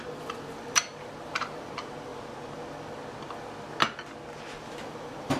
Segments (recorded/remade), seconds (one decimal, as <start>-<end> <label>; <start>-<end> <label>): 0.0-2.1 remade; 2.1-4.8 recorded; 4.8-5.4 remade